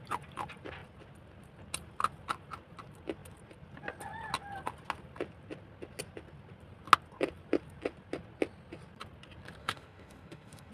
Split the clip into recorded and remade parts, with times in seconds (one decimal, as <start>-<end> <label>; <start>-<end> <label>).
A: 0.0-9.6 recorded; 9.6-10.7 remade